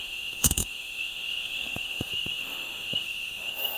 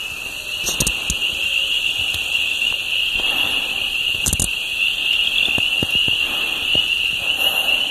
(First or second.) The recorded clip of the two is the second